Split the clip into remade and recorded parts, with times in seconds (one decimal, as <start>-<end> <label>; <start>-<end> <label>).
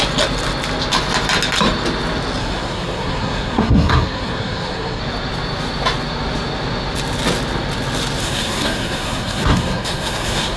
0.0-2.4 recorded; 2.4-5.0 remade; 5.0-8.2 recorded; 8.2-10.6 remade